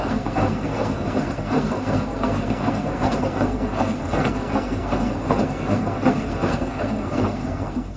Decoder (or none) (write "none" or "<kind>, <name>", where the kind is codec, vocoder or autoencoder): codec, SNAC